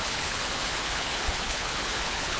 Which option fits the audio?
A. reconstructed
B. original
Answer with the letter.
A